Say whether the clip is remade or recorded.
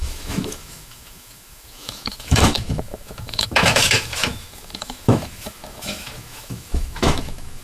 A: remade